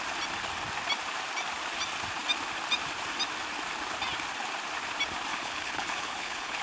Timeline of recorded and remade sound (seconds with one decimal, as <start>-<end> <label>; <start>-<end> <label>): 0.0-5.3 recorded; 5.3-6.6 remade